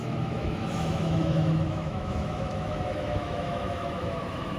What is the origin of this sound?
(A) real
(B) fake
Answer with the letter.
B